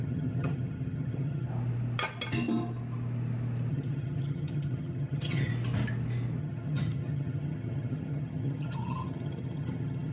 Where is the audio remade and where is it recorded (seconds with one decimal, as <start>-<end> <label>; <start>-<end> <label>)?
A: 0.0-1.5 remade; 1.5-3.7 recorded; 3.7-5.5 remade; 5.5-6.4 recorded; 6.4-10.1 remade